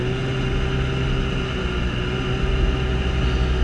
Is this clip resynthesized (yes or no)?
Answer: no